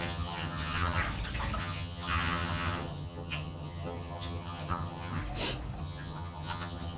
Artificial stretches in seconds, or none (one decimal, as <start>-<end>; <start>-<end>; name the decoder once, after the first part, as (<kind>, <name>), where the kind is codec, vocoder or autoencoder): 0.0-1.0 (vocoder, HiFi-GAN); 1.6-5.2; 5.8-7.0